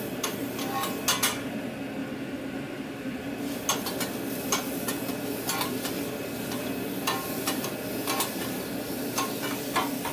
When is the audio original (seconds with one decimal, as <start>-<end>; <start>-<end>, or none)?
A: 0.0-10.1